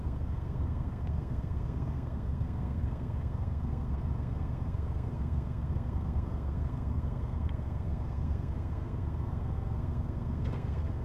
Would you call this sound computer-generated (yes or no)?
yes